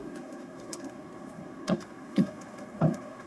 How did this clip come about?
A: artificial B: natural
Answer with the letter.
A